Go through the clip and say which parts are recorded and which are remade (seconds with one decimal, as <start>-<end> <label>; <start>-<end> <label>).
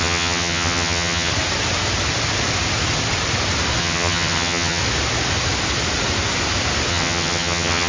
0.0-1.3 remade; 1.3-3.8 recorded; 3.8-4.8 remade; 4.8-6.9 recorded; 6.9-7.9 remade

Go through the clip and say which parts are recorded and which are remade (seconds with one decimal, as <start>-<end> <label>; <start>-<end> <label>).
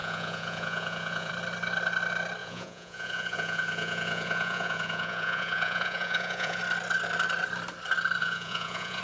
0.0-1.3 remade; 1.3-2.4 recorded; 2.4-6.6 remade; 6.6-8.2 recorded; 8.2-9.0 remade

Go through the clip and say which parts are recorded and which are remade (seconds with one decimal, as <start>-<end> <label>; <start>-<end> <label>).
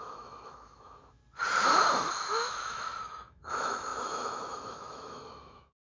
0.0-1.2 remade; 1.2-2.1 recorded; 2.1-6.0 remade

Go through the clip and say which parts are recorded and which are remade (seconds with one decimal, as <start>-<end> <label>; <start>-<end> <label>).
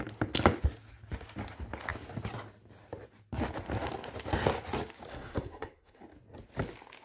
0.0-5.1 recorded; 5.1-6.0 remade; 6.0-7.0 recorded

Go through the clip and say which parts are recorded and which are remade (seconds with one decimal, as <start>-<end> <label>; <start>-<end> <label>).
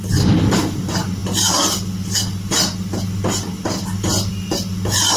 0.0-5.2 recorded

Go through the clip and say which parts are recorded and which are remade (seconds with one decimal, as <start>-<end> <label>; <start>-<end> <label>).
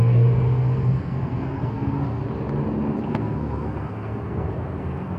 0.0-2.2 remade; 2.2-3.1 recorded; 3.1-5.2 remade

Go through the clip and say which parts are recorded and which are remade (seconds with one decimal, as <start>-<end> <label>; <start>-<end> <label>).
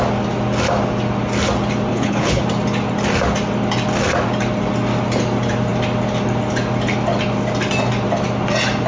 0.0-1.9 recorded; 1.9-2.4 remade; 2.4-8.9 recorded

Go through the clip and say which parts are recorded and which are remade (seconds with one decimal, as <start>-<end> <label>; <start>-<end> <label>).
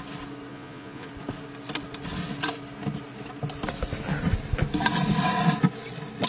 0.0-0.5 recorded; 0.5-1.1 remade; 1.1-6.3 recorded